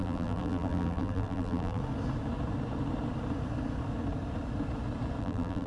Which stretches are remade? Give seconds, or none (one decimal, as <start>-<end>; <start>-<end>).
0.0-1.8; 5.2-5.7